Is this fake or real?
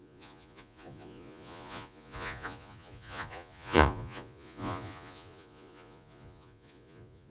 fake